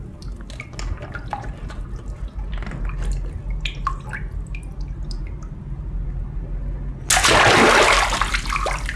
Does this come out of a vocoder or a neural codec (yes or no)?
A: no